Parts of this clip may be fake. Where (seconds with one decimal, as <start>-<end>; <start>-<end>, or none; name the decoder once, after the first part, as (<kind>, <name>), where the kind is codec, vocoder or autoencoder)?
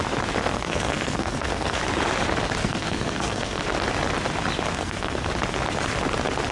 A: 0.4-1.8 (codec, SNAC); 2.6-3.6; 4.7-5.3